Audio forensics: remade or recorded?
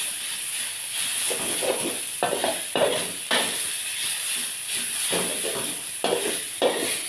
recorded